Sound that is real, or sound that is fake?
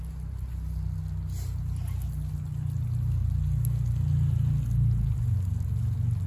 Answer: real